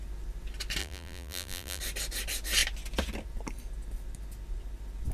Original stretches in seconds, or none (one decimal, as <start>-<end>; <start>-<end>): 0.0-0.8; 1.8-5.1

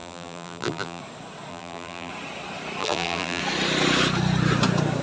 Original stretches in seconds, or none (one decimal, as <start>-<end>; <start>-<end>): 1.0-1.5; 2.1-2.8; 3.4-5.0

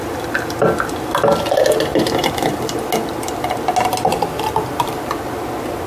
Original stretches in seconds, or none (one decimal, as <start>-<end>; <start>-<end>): 0.0-1.9; 2.6-4.1; 5.2-5.9